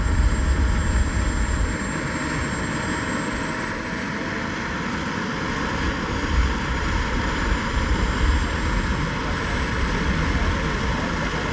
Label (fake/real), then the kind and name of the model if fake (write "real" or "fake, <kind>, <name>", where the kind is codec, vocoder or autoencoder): real